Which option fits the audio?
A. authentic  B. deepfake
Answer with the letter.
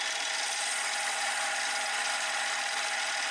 A